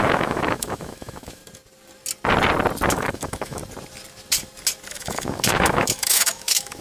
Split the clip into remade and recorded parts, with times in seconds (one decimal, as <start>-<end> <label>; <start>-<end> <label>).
0.0-1.4 remade; 1.4-2.9 recorded; 2.9-3.6 remade; 3.6-4.9 recorded; 4.9-6.8 remade